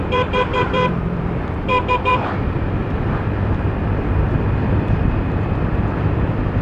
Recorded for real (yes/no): no